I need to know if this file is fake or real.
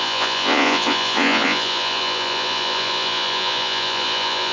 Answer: fake